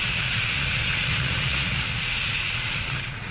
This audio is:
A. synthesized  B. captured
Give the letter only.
A